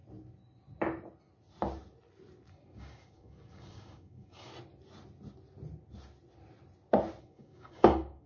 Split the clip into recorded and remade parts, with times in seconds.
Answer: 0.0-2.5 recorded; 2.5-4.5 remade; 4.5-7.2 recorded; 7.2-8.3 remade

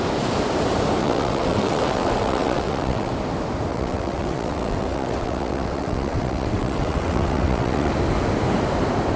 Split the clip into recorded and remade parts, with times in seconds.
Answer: 0.0-1.0 recorded; 1.0-3.1 remade; 3.1-3.7 recorded; 3.7-7.9 remade; 7.9-9.2 recorded

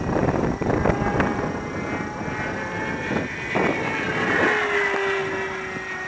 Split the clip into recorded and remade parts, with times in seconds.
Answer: 0.0-6.1 recorded

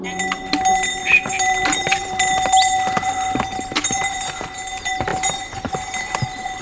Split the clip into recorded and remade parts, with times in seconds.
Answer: 0.0-1.0 recorded; 1.0-2.1 remade; 2.1-6.6 recorded

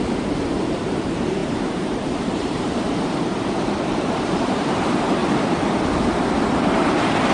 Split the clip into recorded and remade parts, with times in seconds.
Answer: 0.0-5.2 remade; 5.2-6.4 recorded; 6.4-7.3 remade